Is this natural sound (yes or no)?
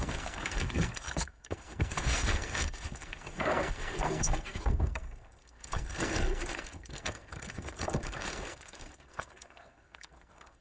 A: no